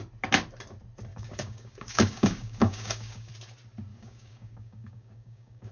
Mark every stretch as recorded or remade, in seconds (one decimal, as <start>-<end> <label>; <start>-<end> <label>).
0.0-1.1 recorded; 1.1-3.3 remade; 3.3-3.9 recorded; 3.9-5.7 remade